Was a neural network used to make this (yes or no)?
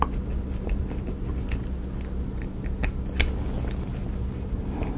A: no